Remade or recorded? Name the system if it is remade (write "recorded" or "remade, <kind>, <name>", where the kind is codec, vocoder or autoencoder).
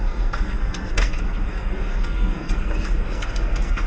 remade, codec, SNAC